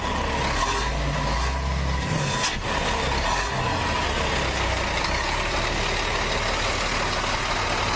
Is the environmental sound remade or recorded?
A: recorded